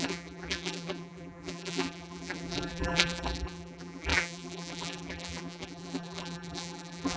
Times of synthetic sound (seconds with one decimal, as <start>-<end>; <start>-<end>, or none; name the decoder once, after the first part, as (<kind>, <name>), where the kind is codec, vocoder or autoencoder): 0.0-7.2 (vocoder, BigVGAN v2)